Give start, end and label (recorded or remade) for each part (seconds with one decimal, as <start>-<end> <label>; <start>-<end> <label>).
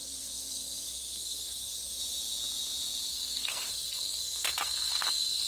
0.0-2.0 remade; 2.0-3.1 recorded; 3.1-5.5 remade